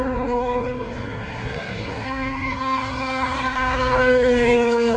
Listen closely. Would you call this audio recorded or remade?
remade